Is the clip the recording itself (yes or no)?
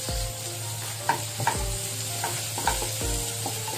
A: yes